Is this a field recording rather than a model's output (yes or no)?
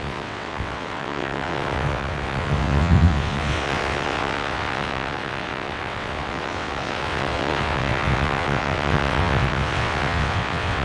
no